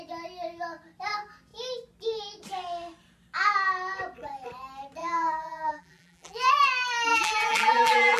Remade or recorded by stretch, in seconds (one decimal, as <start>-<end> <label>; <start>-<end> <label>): 0.0-5.0 recorded; 5.0-6.5 remade; 6.5-7.1 recorded; 7.1-8.2 remade